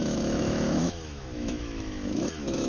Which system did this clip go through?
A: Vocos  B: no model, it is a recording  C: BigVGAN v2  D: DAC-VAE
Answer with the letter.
D